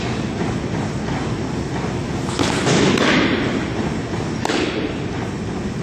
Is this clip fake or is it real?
real